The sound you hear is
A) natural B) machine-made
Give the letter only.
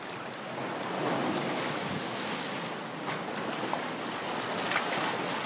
A